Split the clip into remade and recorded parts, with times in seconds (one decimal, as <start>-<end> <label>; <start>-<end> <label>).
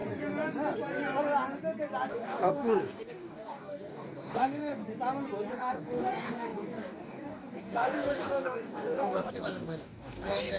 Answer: 0.0-2.1 recorded; 2.1-4.8 remade; 4.8-5.5 recorded; 5.5-10.6 remade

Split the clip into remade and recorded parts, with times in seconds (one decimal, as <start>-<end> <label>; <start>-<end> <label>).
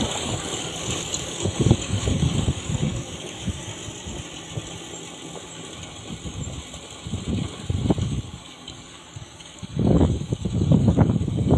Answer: 0.0-3.7 remade; 3.7-8.0 recorded; 8.0-11.6 remade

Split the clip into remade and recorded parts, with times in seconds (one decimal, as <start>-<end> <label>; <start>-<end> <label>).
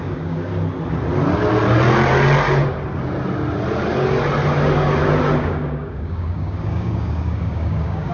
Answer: 0.0-0.5 remade; 0.5-5.4 recorded; 5.4-8.1 remade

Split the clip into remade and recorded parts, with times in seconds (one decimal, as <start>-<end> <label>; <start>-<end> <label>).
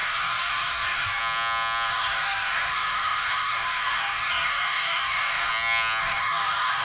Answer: 0.0-1.2 remade; 1.2-1.9 recorded; 1.9-5.5 remade; 5.5-6.0 recorded; 6.0-6.8 remade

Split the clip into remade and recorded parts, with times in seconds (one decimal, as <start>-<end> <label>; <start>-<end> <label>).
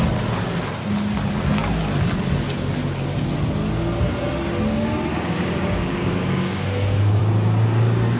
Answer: 0.0-5.1 recorded; 5.1-7.2 remade; 7.2-8.2 recorded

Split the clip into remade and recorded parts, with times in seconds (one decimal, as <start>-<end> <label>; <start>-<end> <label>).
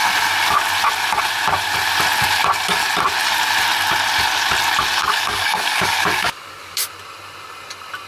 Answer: 0.0-5.0 recorded; 5.0-6.8 remade; 6.8-8.1 recorded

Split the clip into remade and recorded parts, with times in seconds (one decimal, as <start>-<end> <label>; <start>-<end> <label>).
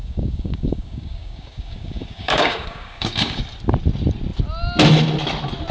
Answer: 0.0-3.4 remade; 3.4-5.7 recorded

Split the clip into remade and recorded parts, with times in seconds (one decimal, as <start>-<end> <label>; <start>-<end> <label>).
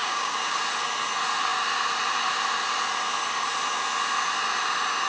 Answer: 0.0-0.6 remade; 0.6-5.1 recorded